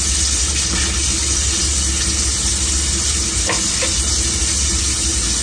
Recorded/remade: recorded